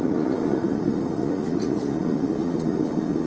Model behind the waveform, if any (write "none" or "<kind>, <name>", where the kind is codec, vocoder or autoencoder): vocoder, Vocos